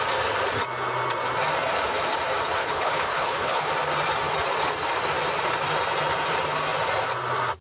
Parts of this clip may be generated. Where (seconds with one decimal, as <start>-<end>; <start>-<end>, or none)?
2.6-3.7